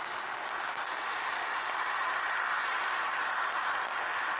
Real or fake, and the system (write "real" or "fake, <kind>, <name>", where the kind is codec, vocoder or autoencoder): real